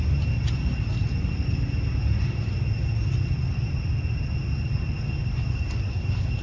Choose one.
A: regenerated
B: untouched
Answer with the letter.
B